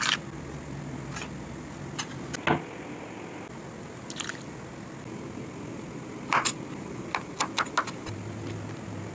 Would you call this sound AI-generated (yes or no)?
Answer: no